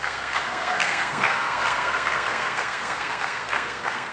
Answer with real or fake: fake